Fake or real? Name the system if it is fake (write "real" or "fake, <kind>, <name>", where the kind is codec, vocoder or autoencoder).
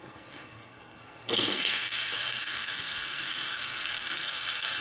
fake, codec, SNAC